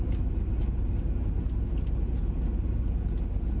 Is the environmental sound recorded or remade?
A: recorded